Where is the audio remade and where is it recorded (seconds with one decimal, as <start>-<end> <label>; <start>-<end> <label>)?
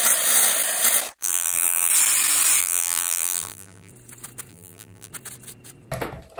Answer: 0.0-1.2 recorded; 1.2-1.9 remade; 1.9-2.6 recorded; 2.6-3.9 remade; 3.9-4.5 recorded; 4.5-5.1 remade; 5.1-6.4 recorded